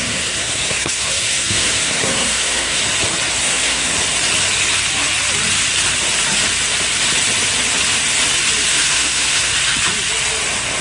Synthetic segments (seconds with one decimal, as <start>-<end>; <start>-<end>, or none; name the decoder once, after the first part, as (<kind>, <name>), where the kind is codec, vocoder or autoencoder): 0.0-2.8 (codec, SNAC); 3.4-3.9; 8.7-9.5

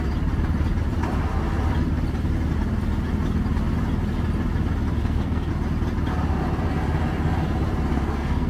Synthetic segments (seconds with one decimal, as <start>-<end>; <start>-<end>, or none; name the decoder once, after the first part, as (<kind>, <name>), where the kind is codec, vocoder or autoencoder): 5.0-5.5 (codec, SNAC); 7.9-8.5